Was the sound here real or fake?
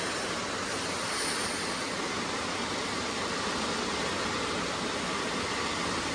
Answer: real